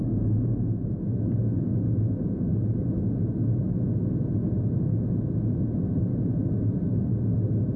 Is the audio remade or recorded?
recorded